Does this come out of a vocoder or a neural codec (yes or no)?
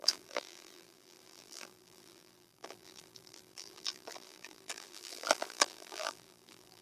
yes